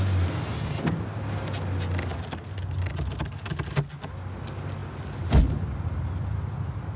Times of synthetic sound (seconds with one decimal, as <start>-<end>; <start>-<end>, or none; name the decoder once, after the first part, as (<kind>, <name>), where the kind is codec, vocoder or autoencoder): none